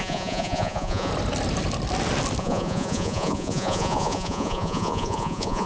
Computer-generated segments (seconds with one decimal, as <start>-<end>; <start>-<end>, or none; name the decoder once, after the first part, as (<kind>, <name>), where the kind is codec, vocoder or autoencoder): 0.0-1.1 (vocoder, Vocos); 2.4-5.7